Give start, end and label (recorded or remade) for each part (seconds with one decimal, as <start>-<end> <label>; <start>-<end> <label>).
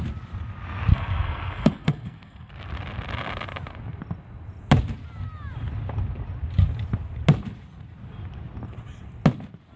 0.0-0.9 recorded; 0.9-2.5 remade; 2.5-9.8 recorded